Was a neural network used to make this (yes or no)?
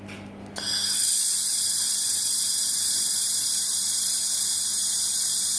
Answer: no